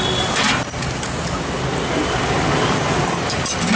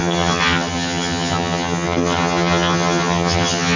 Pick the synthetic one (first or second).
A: second